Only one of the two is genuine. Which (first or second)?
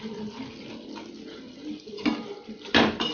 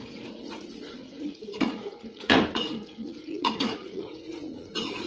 first